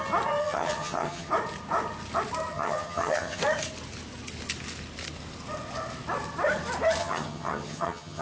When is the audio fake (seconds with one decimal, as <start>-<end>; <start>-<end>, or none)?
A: 0.4-1.3; 2.5-3.4; 7.0-8.2